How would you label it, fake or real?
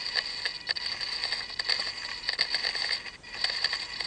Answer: real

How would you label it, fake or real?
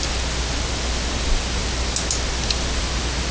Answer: real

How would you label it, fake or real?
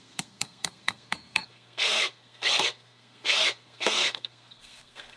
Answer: fake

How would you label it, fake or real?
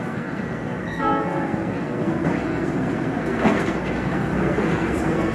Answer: fake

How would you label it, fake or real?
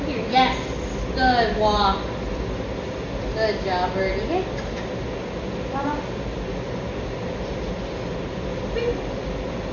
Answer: real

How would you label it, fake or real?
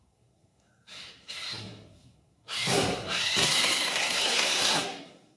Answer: fake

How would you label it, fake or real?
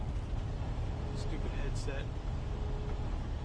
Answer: real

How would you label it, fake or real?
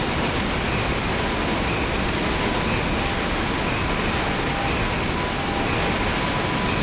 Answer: real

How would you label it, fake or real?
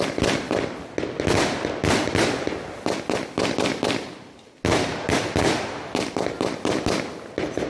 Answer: real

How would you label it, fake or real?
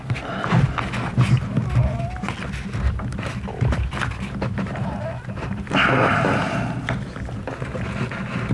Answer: real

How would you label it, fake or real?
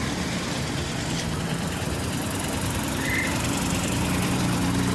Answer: fake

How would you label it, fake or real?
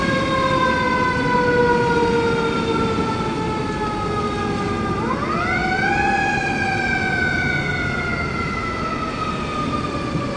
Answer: real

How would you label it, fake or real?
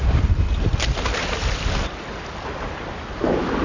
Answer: real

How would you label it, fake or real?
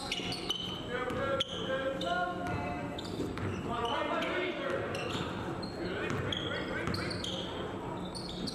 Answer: real